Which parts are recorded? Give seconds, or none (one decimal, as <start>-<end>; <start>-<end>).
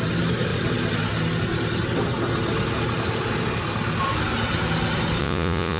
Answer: 0.0-5.2